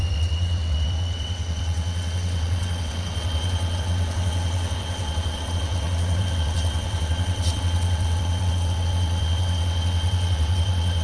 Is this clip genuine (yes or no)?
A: no